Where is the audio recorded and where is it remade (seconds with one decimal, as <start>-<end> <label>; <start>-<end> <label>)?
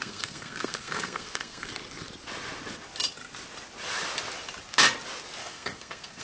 0.0-1.7 remade; 1.7-5.4 recorded; 5.4-6.2 remade